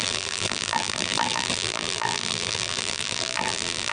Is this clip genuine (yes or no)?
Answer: no